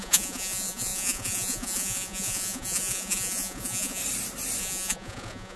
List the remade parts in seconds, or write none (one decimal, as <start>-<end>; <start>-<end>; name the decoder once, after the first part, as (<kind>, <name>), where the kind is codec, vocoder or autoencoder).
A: 0.0-4.0 (vocoder, Vocos); 4.6-5.6